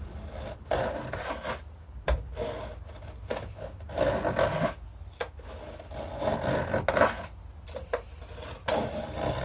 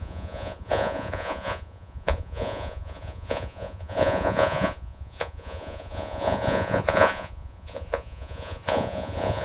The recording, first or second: first